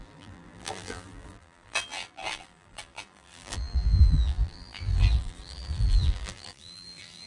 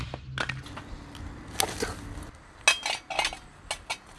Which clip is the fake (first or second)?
first